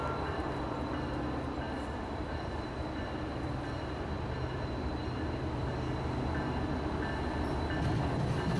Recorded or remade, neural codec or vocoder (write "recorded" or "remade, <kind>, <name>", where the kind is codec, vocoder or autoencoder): recorded